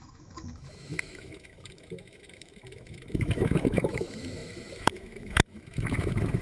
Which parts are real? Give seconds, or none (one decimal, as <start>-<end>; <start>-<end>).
none